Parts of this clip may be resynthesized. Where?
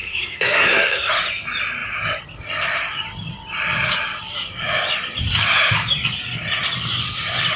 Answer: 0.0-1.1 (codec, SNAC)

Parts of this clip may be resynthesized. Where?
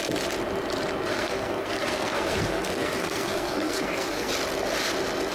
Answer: 1.1-4.3 (codec, SNAC)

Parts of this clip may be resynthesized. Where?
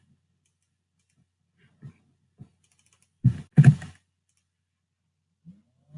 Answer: none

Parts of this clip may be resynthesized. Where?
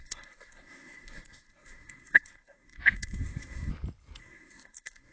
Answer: 0.0-3.7 (codec, SNAC); 4.2-5.1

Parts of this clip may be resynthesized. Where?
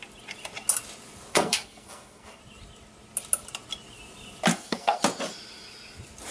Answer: 1.3-2.4 (codec, SNAC); 4.5-5.0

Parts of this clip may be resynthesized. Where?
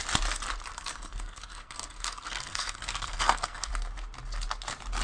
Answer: 0.7-3.7 (codec, SNAC)